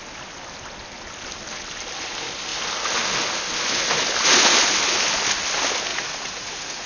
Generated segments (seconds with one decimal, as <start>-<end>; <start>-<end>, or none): 5.9-6.9